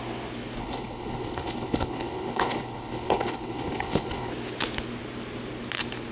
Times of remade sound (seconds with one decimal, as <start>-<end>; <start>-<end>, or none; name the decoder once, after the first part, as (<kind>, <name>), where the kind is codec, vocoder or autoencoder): 0.6-4.3 (codec, HILCodec)